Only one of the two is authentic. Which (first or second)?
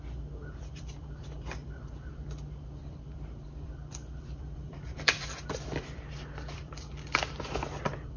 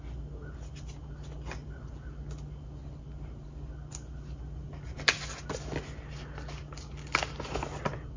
second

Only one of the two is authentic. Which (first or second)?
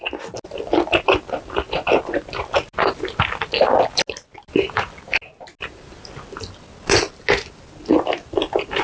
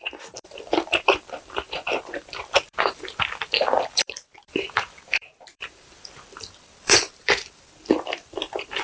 first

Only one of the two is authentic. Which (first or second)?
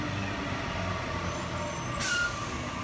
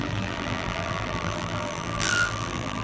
first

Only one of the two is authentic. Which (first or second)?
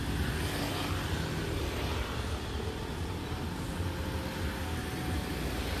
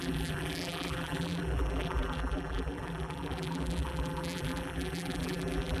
first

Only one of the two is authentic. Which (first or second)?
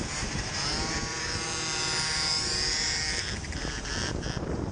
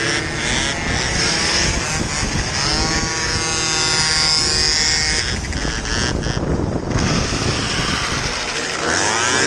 second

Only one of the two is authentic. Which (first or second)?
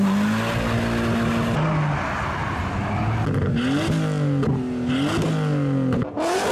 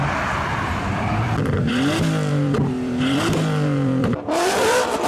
first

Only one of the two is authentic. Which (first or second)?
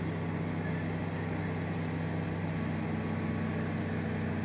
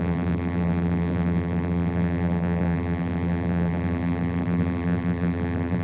first